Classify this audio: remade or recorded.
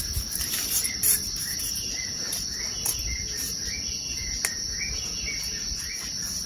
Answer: recorded